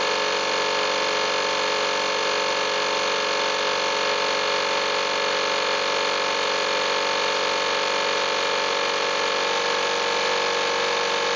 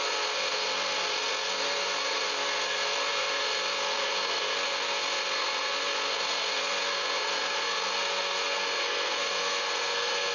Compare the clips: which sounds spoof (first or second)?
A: second